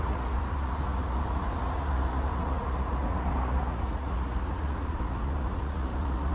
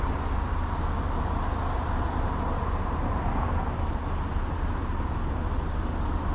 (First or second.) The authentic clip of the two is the second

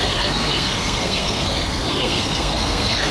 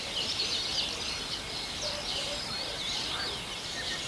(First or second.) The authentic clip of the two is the second